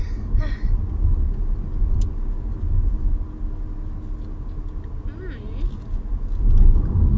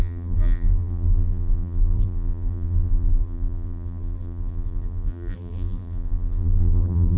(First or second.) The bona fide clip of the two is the first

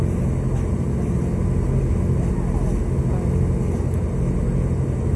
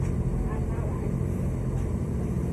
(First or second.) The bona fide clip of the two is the first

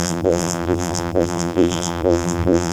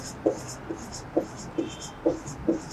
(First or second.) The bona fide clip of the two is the second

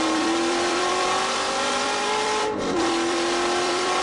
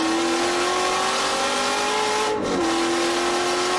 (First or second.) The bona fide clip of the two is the second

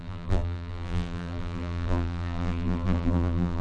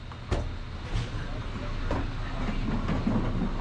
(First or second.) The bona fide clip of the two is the second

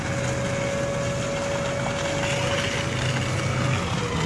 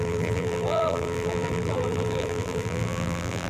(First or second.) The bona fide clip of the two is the first